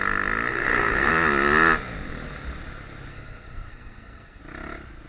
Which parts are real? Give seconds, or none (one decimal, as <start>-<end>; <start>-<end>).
0.0-0.5; 1.1-3.1; 4.4-5.1